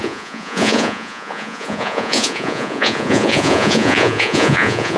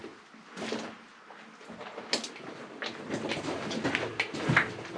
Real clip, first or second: second